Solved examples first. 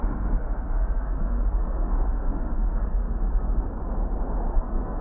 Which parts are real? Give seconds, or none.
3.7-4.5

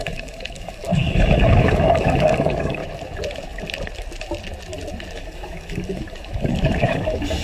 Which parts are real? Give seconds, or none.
2.8-5.1

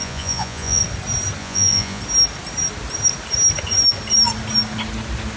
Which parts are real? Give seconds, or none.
0.8-1.4; 2.0-5.4

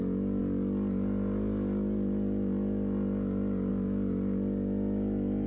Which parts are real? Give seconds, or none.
0.0-5.5

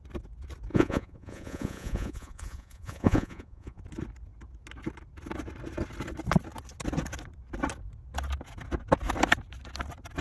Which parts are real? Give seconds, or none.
0.0-0.7; 3.8-10.2

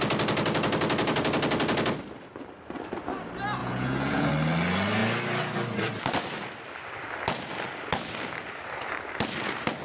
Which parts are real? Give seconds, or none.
0.0-3.6; 4.3-9.8